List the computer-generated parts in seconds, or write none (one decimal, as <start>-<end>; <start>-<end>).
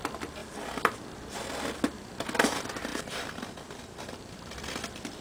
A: 2.9-3.4